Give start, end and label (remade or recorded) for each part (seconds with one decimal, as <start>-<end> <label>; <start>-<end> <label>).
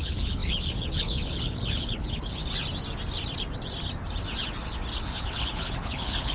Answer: 0.0-2.4 remade; 2.4-5.0 recorded; 5.0-6.3 remade